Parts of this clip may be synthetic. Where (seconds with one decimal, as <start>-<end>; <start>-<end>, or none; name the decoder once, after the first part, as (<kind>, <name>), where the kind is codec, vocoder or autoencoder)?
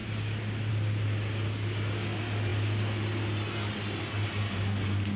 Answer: none